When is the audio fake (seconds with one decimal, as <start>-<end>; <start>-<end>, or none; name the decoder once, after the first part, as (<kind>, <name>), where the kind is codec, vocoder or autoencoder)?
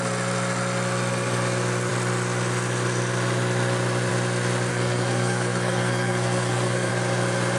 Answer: 4.7-6.9 (codec, SNAC)